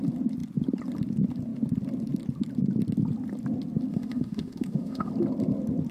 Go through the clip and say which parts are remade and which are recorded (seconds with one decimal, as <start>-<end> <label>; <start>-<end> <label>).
0.0-3.9 recorded; 3.9-5.1 remade; 5.1-5.9 recorded